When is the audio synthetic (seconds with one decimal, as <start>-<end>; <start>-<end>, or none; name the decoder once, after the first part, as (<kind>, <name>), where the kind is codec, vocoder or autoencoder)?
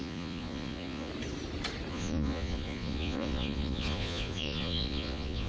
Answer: 0.0-1.1 (vocoder, Vocos); 1.9-5.5